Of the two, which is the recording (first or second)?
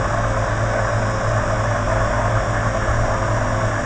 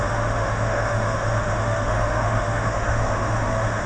first